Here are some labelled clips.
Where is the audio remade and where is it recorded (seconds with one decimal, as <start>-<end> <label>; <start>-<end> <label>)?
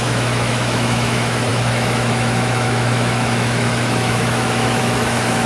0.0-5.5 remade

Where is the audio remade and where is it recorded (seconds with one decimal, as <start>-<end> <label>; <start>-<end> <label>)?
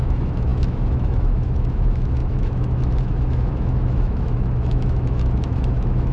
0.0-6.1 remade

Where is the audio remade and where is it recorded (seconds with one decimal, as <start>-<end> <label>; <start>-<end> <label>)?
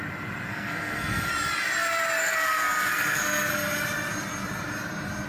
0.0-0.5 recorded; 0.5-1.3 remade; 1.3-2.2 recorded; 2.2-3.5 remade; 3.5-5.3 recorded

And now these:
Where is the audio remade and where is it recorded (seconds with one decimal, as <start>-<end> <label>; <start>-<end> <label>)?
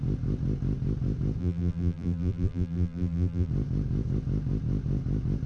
0.0-1.4 recorded; 1.4-3.5 remade; 3.5-5.5 recorded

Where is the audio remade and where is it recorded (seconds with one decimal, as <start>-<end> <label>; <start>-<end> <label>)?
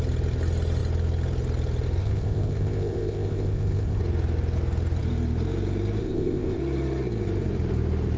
0.0-2.0 recorded; 2.0-4.0 remade; 4.0-6.0 recorded; 6.0-6.6 remade; 6.6-8.2 recorded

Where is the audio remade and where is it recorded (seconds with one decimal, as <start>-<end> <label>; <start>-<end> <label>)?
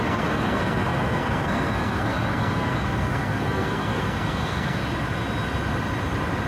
0.0-4.8 remade; 4.8-6.5 recorded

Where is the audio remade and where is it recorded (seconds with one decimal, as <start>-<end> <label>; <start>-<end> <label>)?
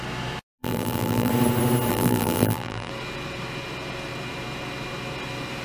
0.0-0.6 recorded; 0.6-1.3 remade; 1.3-1.9 recorded; 1.9-2.9 remade; 2.9-5.6 recorded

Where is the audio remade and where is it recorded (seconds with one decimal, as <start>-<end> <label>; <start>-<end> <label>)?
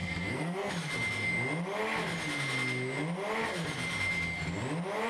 0.0-0.7 remade; 0.7-5.1 recorded